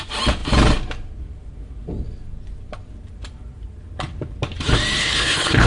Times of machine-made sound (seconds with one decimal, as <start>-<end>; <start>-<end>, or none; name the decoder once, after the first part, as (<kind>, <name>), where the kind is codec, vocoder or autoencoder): 5.0-5.7 (codec, HILCodec)